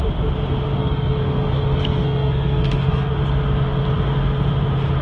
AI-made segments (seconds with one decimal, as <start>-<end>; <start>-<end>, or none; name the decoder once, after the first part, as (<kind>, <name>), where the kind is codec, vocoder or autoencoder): 0.8-3.2 (codec, SNAC)